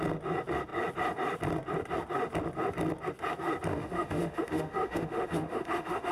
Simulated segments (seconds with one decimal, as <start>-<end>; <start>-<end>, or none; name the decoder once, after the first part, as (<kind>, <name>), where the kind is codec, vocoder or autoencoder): 3.7-6.1 (autoencoder, DAC-VAE)